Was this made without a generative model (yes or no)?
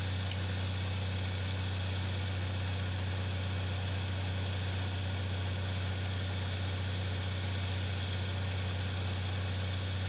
yes